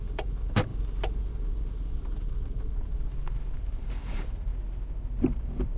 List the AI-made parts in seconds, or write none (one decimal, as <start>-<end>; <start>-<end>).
0.0-0.7; 1.2-4.5; 5.2-5.8